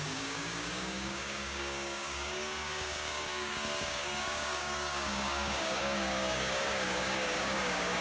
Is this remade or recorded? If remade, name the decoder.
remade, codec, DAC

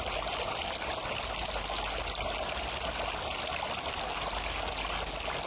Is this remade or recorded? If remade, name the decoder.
recorded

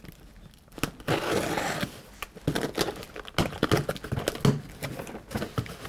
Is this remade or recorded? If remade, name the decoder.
recorded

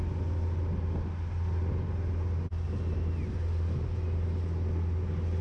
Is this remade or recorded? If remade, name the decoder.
recorded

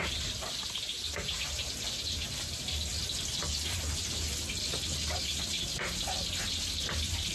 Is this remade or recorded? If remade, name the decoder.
recorded